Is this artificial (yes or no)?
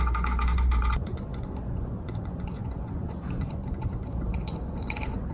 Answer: yes